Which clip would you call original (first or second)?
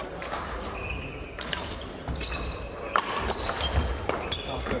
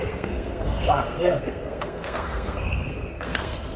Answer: first